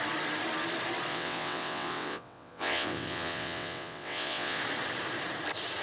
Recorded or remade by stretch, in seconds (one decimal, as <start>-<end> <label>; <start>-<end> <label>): 0.0-1.1 recorded; 1.1-4.6 remade; 4.6-5.8 recorded